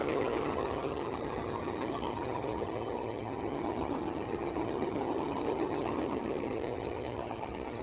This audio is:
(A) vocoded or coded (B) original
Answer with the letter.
A